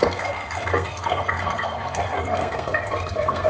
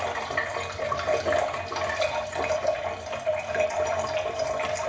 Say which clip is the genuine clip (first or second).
second